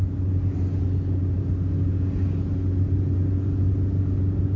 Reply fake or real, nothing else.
real